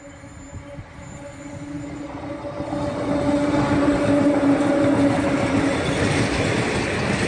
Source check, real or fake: real